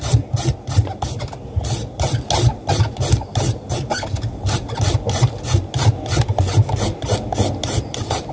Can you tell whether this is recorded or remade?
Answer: recorded